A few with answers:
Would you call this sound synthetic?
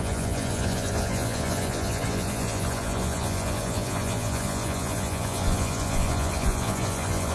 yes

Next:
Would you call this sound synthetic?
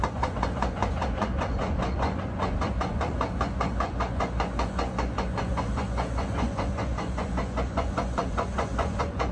yes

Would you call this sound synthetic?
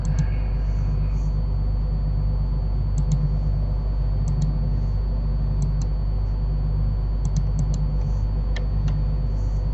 no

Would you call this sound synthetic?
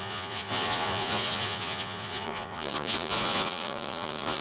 yes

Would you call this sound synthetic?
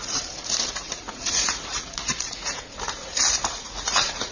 yes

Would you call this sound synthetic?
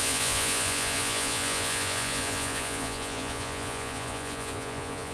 yes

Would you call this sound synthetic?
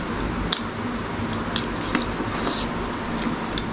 no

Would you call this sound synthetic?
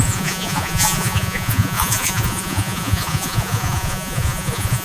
yes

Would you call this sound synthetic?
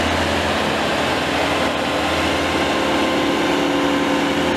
no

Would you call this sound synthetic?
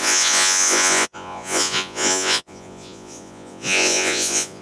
yes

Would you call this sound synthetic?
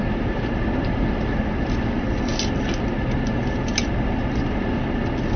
no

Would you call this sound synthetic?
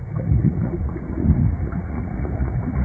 yes